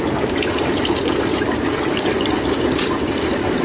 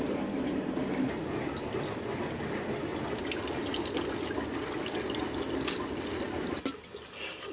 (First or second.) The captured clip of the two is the second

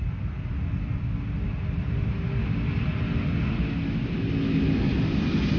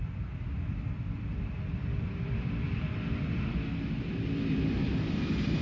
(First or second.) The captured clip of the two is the first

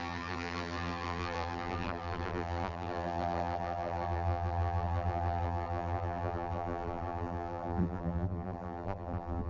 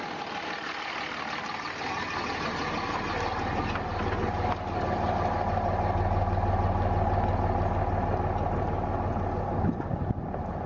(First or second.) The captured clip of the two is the second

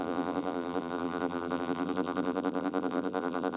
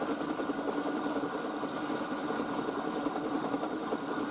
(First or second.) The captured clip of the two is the second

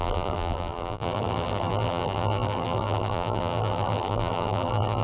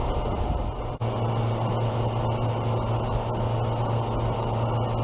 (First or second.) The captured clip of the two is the second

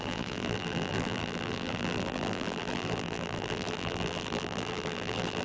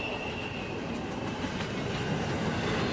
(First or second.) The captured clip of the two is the second